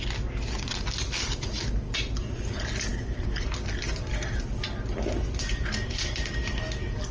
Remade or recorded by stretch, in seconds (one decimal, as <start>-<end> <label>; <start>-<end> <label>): 0.0-7.1 recorded